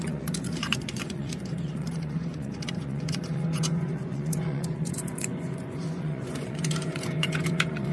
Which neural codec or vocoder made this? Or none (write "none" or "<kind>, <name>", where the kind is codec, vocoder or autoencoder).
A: vocoder, Vocos